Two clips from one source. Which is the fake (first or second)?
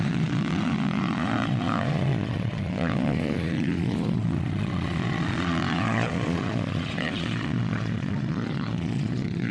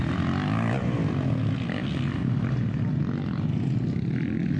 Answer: first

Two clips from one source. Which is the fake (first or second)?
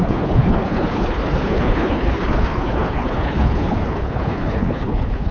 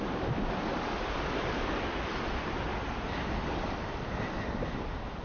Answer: first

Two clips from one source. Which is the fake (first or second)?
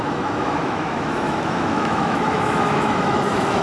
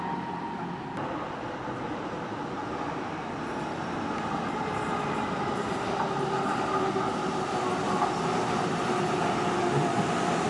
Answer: first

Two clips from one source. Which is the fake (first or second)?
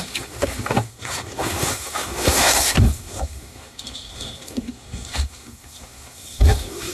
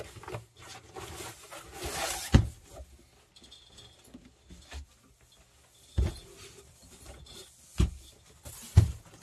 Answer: first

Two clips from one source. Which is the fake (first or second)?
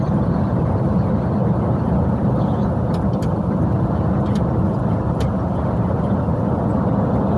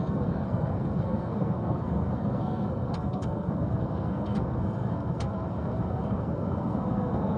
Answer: second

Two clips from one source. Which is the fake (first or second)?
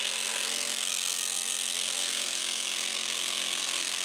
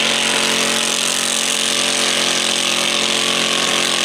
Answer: first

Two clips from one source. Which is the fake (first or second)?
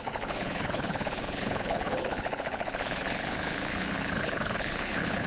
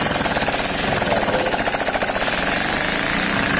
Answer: first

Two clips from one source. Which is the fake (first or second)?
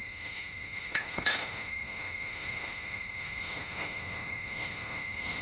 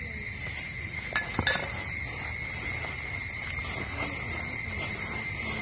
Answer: first